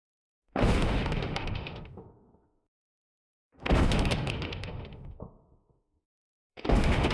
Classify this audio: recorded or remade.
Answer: remade